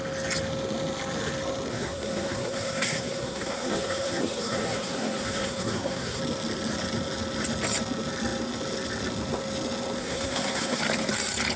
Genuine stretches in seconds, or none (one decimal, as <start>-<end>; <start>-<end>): 0.0-1.7; 6.2-10.0; 10.8-11.6